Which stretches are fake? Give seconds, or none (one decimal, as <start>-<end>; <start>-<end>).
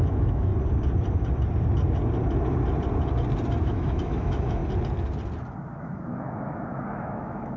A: 0.0-0.5; 3.6-4.6; 5.8-7.6